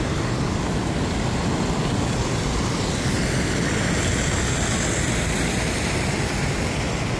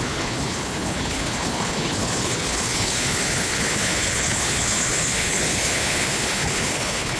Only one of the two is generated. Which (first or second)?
second